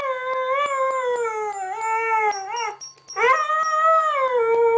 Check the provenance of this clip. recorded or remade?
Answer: recorded